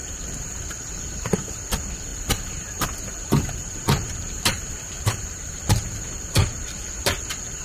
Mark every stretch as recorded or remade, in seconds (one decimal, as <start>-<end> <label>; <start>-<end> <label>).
0.0-0.9 remade; 0.9-2.1 recorded; 2.1-6.0 remade; 6.0-7.6 recorded